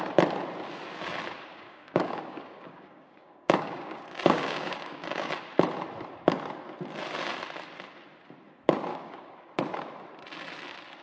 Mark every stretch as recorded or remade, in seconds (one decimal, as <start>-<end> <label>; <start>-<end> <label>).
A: 0.0-1.5 recorded; 1.5-5.3 remade; 5.3-8.9 recorded; 8.9-9.5 remade; 9.5-11.0 recorded